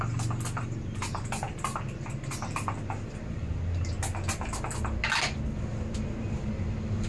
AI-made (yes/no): no